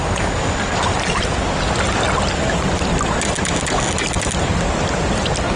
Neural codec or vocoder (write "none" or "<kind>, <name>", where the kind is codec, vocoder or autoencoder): none